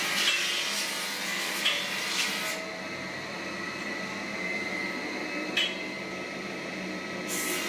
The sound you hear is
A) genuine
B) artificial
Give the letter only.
A